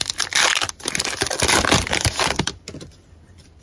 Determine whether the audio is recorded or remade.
recorded